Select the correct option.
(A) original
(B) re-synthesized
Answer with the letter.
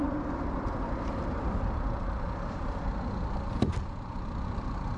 A